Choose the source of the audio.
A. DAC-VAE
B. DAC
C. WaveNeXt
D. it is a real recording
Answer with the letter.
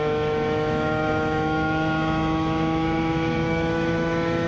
A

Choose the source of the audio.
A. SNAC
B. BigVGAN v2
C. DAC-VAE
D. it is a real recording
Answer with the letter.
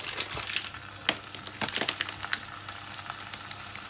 D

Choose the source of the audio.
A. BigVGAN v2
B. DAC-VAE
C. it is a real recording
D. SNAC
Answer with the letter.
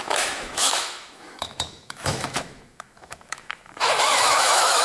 B